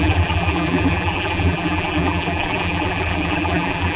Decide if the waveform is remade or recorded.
remade